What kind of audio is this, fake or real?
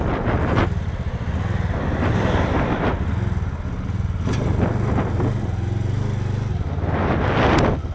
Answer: real